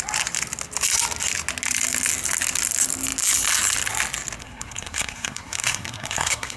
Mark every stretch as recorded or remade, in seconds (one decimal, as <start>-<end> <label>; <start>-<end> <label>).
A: 0.0-4.4 recorded; 4.4-6.6 remade